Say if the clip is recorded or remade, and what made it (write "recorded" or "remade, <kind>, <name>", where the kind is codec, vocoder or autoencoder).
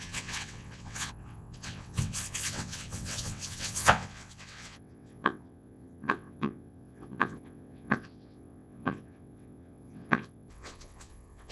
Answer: remade, vocoder, WaveNeXt